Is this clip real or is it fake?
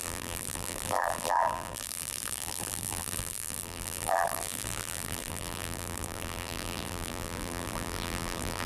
fake